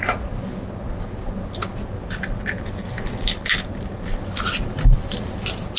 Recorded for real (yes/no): yes